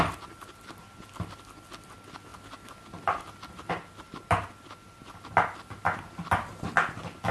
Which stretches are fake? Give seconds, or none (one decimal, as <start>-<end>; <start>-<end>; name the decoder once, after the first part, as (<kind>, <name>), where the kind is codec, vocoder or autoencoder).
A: none